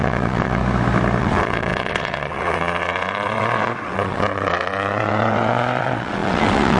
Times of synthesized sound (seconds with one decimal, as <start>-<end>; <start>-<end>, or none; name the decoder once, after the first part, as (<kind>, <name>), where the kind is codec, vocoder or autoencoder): 0.0-0.6 (vocoder, WaveNeXt); 1.2-6.8